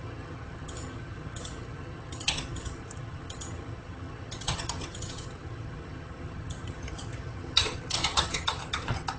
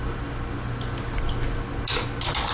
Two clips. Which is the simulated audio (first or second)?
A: first